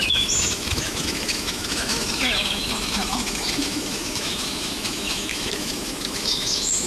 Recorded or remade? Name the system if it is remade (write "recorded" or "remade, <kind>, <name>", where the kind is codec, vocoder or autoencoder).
remade, autoencoder, DAC-VAE